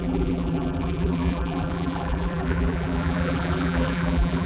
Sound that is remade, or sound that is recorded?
remade